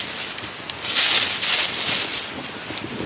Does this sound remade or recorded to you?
recorded